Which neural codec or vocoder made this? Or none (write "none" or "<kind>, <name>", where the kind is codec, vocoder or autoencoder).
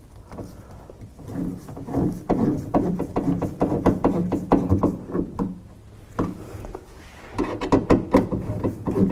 none